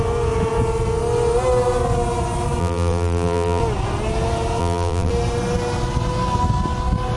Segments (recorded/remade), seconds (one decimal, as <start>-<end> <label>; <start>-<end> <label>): 0.0-2.6 recorded; 2.6-3.6 remade; 3.6-4.6 recorded; 4.6-5.1 remade; 5.1-7.2 recorded